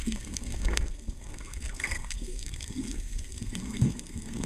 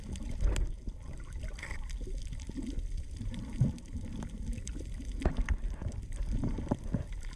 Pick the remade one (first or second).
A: first